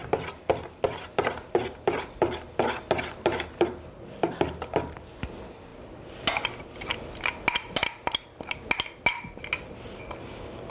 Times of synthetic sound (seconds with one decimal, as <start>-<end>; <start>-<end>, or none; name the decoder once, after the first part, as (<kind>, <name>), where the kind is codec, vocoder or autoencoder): none